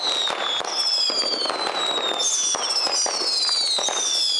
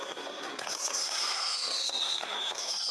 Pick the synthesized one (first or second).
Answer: second